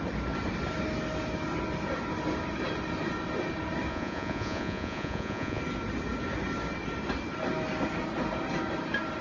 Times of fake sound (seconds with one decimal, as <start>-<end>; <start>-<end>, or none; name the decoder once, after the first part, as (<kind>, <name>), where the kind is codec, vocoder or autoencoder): 3.9-5.6 (vocoder, Vocos)